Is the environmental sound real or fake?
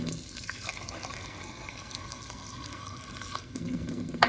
fake